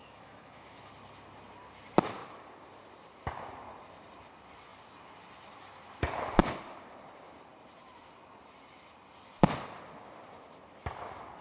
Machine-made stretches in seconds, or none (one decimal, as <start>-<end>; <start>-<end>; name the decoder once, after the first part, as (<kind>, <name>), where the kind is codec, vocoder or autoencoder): 0.0-0.9 (autoencoder, DAC-VAE)